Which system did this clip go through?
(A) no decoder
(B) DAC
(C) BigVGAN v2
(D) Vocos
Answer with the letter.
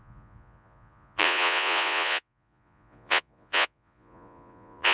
D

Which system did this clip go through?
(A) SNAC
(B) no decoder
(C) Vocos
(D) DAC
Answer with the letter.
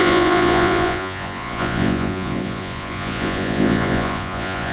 C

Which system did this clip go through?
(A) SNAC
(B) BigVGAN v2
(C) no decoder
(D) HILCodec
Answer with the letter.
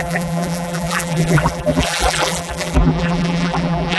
B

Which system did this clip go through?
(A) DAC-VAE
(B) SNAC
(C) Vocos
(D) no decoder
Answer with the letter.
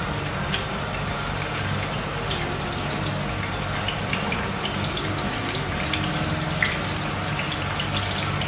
D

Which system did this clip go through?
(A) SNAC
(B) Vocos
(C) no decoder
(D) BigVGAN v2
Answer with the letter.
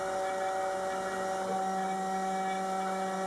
C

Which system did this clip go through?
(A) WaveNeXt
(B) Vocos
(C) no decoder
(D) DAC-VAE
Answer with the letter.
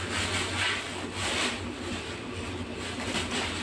C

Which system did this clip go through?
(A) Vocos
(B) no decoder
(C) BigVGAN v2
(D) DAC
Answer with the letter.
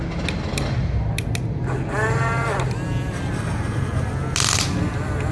B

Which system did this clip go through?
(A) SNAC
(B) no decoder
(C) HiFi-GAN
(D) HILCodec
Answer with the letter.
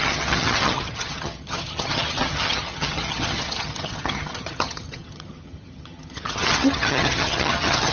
C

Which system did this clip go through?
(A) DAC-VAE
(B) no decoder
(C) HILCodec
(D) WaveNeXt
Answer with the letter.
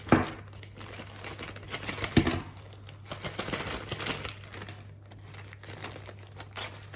B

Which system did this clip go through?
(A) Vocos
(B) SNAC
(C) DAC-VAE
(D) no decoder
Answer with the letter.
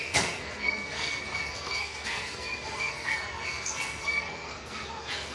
B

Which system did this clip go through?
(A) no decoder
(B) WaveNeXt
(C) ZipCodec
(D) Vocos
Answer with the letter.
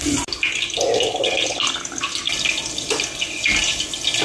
A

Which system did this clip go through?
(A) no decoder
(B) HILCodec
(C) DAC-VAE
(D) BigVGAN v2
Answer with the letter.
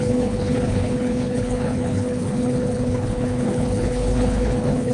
B